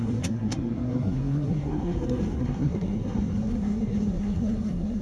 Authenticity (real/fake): fake